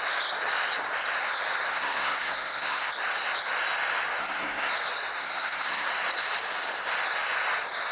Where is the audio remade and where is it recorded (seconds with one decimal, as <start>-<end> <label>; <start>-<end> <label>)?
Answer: 0.0-1.7 recorded; 1.7-2.9 remade; 2.9-4.2 recorded; 4.2-4.7 remade; 4.7-5.2 recorded; 5.2-5.9 remade; 5.9-7.9 recorded